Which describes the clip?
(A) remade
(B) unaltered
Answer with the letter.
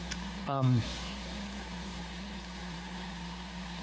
A